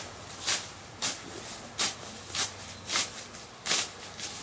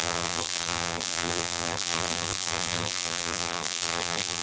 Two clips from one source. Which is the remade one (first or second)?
second